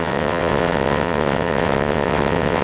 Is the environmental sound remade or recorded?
remade